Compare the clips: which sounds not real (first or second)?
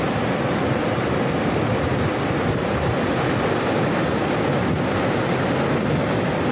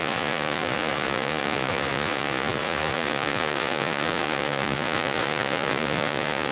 second